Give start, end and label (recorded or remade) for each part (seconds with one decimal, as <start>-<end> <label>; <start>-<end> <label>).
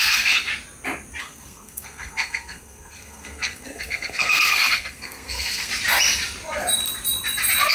0.0-0.5 remade; 0.5-1.2 recorded; 1.2-5.7 remade; 5.7-7.7 recorded